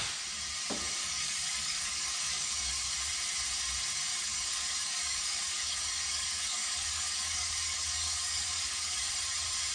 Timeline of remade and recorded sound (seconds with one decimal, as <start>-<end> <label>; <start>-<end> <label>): 0.0-1.0 recorded; 1.0-2.9 remade; 2.9-4.1 recorded; 4.1-9.1 remade; 9.1-9.7 recorded